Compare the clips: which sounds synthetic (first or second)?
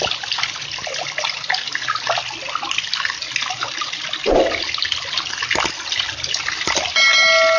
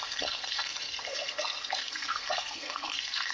second